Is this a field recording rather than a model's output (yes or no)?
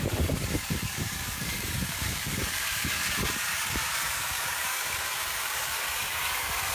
no